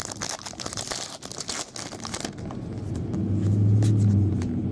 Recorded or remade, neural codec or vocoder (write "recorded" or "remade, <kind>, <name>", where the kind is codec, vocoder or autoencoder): recorded